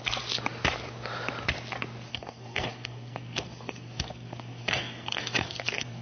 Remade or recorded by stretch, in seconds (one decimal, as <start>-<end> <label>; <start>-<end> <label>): 0.0-2.1 recorded; 2.1-6.0 remade

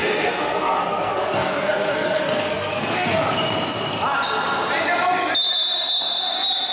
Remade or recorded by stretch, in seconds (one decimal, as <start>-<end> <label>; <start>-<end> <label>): 0.0-3.2 remade; 3.2-6.7 recorded

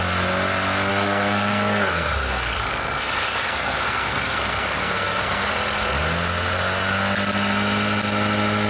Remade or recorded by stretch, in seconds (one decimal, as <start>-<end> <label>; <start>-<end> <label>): 0.0-0.9 recorded; 0.9-5.5 remade; 5.5-8.7 recorded

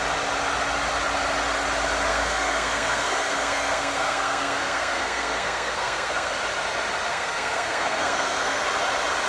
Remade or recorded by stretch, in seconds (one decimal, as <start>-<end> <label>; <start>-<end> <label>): 0.0-2.1 recorded; 2.1-6.3 remade; 6.3-7.1 recorded; 7.1-8.6 remade; 8.6-9.3 recorded

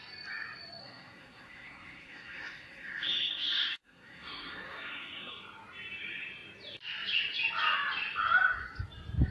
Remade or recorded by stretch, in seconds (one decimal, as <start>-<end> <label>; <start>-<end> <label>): 0.0-0.8 recorded; 0.8-5.3 remade; 5.3-9.3 recorded

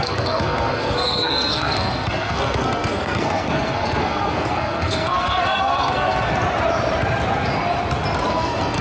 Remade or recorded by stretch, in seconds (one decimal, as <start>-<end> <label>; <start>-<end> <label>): 0.0-6.3 remade; 6.3-8.3 recorded; 8.3-8.8 remade

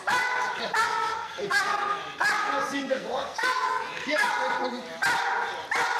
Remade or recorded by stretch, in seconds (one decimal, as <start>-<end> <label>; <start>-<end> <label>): 0.0-0.8 recorded; 0.8-2.0 remade; 2.0-2.4 recorded; 2.4-4.3 remade; 4.3-6.0 recorded

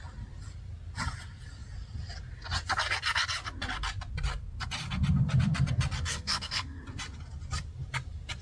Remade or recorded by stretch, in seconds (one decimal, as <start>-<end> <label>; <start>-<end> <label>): 0.0-6.1 recorded; 6.1-6.8 remade; 6.8-8.4 recorded